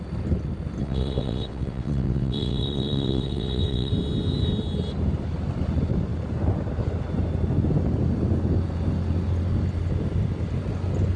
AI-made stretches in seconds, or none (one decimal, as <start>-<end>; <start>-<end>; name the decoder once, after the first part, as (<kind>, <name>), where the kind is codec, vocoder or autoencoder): 0.8-3.9 (vocoder, WaveNeXt)

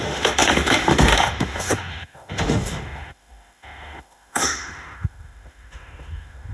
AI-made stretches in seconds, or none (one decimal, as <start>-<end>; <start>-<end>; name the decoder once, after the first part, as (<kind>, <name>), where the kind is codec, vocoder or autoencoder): 0.0-6.5 (autoencoder, DAC-VAE)

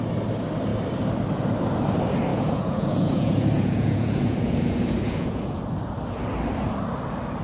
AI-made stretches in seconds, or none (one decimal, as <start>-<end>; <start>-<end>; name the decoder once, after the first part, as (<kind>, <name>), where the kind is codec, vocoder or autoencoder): 2.3-5.6 (vocoder, Vocos)

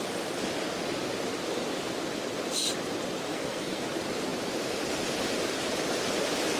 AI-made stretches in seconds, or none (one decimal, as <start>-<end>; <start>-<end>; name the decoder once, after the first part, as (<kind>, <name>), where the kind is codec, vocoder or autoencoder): 3.3-3.8 (codec, SNAC)

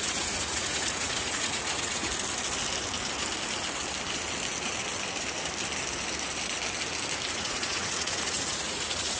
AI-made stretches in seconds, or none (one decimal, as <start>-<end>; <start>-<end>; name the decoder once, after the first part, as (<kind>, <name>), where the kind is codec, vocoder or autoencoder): 0.0-2.1 (vocoder, Vocos); 7.3-9.2

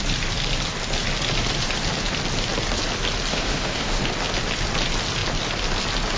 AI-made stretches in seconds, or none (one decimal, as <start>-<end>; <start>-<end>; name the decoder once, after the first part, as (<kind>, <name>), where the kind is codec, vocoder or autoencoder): 3.3-4.0 (autoencoder, DAC-VAE)

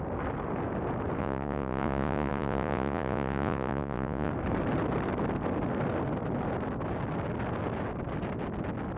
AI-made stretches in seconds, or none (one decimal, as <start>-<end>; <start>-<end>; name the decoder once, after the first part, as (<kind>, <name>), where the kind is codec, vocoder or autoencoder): 1.2-4.3 (vocoder, Vocos)